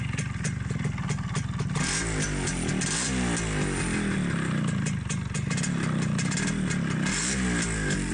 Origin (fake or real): real